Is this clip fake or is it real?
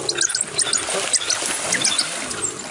real